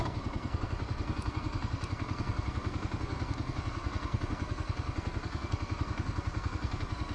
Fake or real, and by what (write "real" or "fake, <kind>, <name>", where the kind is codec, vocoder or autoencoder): fake, codec, SNAC